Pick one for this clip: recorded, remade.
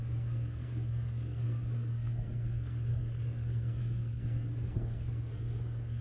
remade